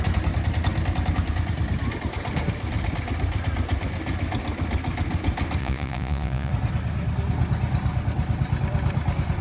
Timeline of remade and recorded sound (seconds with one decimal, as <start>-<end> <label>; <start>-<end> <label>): 0.0-5.6 recorded; 5.6-6.5 remade; 6.5-9.4 recorded

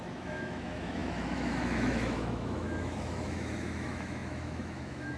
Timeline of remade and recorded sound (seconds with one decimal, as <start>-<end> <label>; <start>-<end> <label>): 0.0-5.2 remade

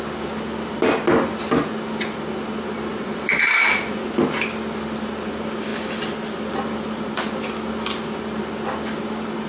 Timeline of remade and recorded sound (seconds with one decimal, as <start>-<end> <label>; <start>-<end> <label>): 0.0-2.9 recorded; 2.9-3.4 remade; 3.4-9.5 recorded

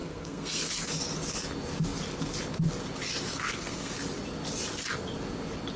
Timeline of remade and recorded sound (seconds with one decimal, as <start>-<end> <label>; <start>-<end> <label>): 0.0-0.7 remade; 0.7-3.3 recorded; 3.3-3.9 remade; 3.9-5.8 recorded

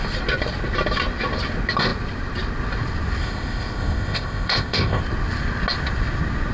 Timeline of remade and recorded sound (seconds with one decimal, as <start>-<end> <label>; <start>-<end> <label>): 0.0-3.2 recorded; 3.2-5.0 remade; 5.0-6.5 recorded

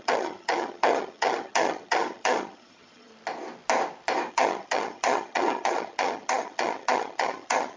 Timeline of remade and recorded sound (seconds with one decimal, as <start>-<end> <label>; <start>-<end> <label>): 0.0-3.1 remade; 3.1-4.3 recorded; 4.3-7.8 remade

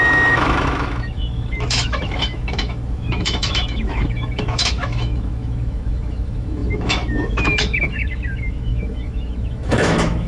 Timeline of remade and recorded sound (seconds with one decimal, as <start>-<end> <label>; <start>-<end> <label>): 0.0-10.3 remade

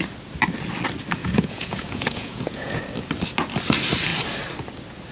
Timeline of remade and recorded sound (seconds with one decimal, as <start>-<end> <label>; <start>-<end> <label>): 0.0-1.2 recorded; 1.2-2.8 remade; 2.8-5.1 recorded